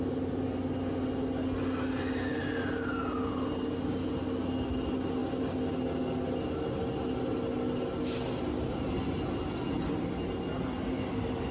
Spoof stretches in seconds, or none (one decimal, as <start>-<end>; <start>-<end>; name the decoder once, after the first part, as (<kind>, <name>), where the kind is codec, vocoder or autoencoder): none